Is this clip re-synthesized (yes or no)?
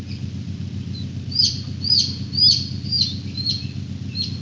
no